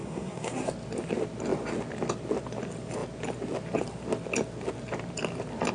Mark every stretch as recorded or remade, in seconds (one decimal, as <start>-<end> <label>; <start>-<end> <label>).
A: 0.0-0.7 remade; 0.7-5.7 recorded